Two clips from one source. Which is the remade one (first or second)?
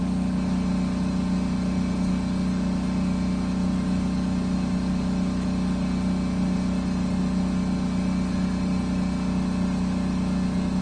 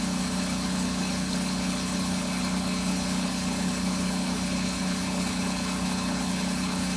second